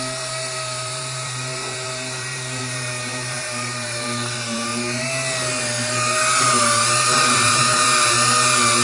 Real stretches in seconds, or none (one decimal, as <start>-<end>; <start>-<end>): 4.7-5.6

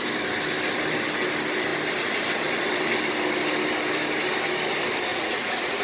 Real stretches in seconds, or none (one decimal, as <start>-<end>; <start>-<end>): 0.0-5.1

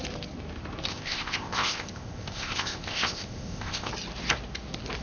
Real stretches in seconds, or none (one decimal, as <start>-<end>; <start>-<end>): 0.0-0.9; 3.9-5.0

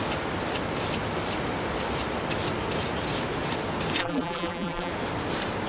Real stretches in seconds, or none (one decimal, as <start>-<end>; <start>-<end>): 0.0-4.0; 4.9-5.7

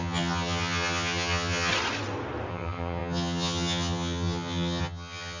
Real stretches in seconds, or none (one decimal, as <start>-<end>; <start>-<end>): 1.7-2.5

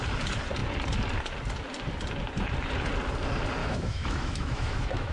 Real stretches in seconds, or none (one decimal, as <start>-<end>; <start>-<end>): 0.0-3.6

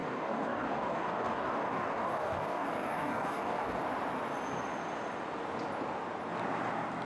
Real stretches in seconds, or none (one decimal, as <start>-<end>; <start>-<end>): 3.8-7.0

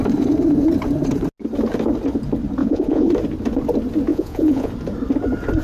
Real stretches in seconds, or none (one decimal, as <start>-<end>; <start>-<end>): 0.0-2.6; 3.1-4.1; 4.7-5.6